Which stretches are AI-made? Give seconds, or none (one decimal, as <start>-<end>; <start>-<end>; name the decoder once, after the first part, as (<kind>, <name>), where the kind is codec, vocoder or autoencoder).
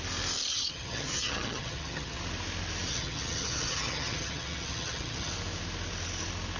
0.5-2.2 (vocoder, HiFi-GAN); 2.9-5.3